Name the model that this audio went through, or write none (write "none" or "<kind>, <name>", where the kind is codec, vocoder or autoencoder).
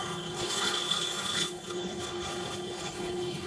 codec, HILCodec